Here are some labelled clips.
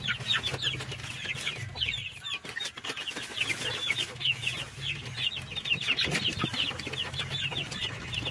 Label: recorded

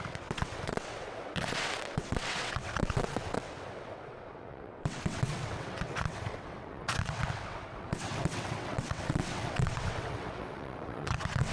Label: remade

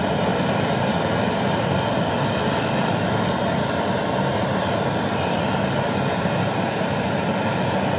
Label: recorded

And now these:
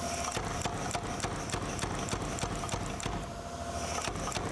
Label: recorded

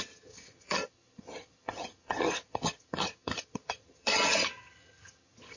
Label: remade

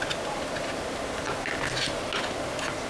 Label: recorded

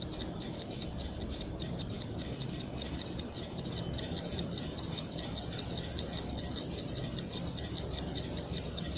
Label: recorded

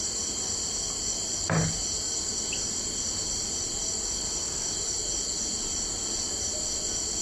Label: recorded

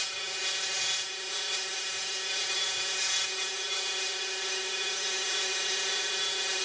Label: remade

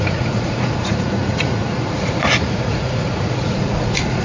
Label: remade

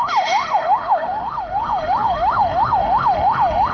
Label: remade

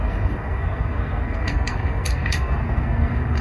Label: remade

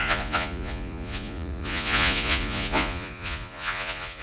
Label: remade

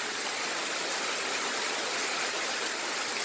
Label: recorded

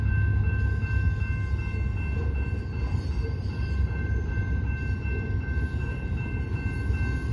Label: recorded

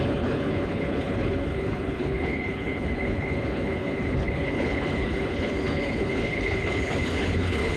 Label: remade